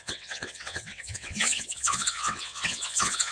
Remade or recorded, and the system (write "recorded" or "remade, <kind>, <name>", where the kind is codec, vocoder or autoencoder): remade, vocoder, WaveNeXt